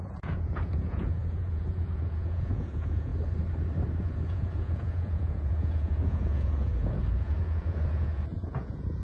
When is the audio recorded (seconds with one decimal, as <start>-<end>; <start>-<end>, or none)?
3.1-4.0